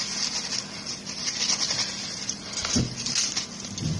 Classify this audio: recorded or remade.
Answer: recorded